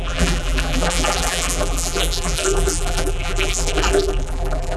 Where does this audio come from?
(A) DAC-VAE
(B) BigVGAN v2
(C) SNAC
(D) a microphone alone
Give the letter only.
B